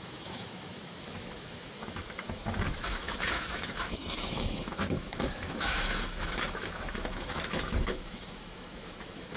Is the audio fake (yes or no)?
yes